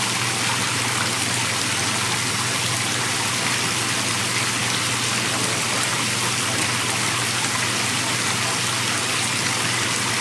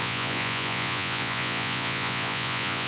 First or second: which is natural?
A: first